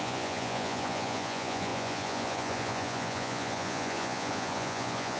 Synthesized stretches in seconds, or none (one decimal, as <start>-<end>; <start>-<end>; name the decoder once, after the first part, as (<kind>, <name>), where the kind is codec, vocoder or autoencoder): 0.0-5.2 (vocoder, Vocos)